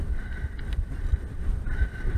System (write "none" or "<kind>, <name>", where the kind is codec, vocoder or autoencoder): none